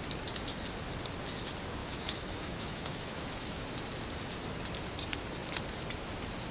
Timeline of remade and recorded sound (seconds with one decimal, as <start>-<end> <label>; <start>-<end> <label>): 0.0-1.8 recorded; 1.8-3.7 remade; 3.7-6.5 recorded